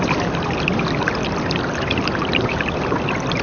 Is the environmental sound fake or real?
real